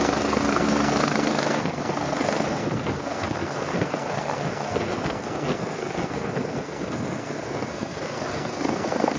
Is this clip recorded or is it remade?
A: remade